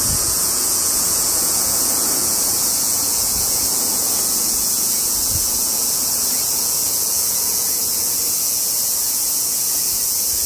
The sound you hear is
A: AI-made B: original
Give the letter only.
A